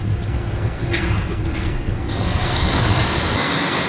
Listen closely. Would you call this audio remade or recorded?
remade